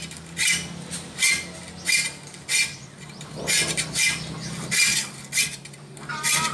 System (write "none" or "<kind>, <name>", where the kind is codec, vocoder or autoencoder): none